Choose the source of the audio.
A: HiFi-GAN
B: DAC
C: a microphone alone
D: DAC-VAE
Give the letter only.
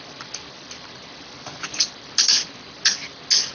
C